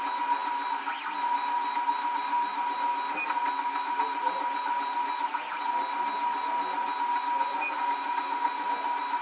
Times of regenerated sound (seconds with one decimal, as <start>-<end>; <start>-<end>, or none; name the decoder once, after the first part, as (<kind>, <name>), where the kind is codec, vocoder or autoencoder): none